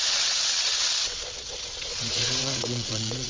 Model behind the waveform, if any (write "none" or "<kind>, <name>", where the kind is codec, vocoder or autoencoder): vocoder, WaveNeXt